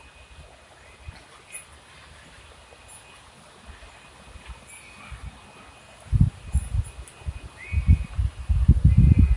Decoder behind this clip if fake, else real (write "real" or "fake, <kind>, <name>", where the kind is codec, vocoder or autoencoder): real